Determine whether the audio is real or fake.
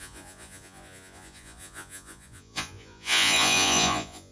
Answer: fake